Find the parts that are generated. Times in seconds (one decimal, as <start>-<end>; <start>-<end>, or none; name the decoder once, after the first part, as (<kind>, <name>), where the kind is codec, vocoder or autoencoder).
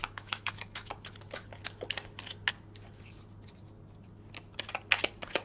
0.0-0.9 (autoencoder, DAC-VAE)